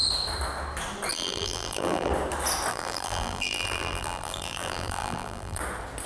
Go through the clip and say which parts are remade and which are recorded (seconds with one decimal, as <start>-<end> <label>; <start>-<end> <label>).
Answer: 0.0-1.1 recorded; 1.1-2.1 remade; 2.1-2.7 recorded; 2.7-5.6 remade; 5.6-6.1 recorded